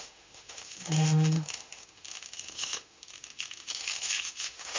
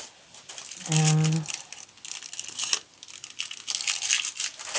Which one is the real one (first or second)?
second